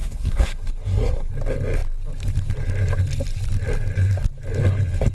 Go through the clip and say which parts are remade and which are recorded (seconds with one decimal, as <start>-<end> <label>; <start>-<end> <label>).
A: 0.0-1.3 remade; 1.3-5.1 recorded